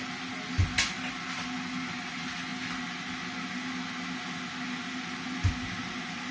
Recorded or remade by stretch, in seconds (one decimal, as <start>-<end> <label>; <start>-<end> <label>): 0.0-6.3 recorded